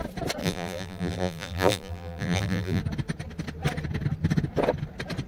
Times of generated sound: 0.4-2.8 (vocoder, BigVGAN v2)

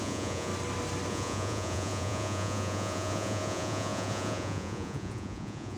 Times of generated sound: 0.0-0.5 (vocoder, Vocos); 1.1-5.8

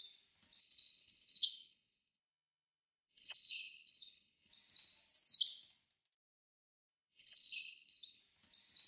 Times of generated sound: 0.6-4.5 (codec, HILCodec); 6.9-8.2

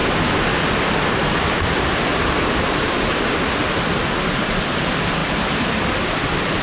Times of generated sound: 4.0-6.6 (vocoder, BigVGAN v2)

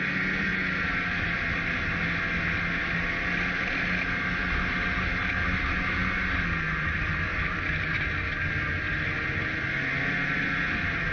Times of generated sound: none